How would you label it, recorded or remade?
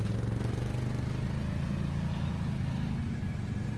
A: recorded